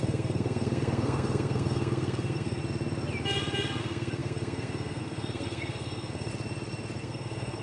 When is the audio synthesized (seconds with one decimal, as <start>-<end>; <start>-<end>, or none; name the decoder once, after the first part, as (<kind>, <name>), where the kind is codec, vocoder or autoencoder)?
0.0-2.6 (codec, SNAC); 3.8-6.3; 7.0-7.6